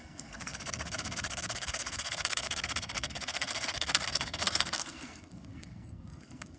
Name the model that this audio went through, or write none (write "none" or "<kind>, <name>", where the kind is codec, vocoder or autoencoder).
codec, SNAC